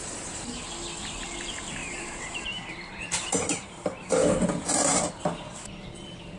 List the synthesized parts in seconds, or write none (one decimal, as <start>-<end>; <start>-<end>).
0.0-0.6; 1.8-5.1